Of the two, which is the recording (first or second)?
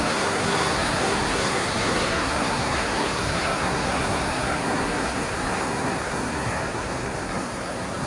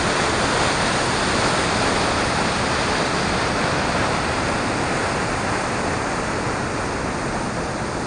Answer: second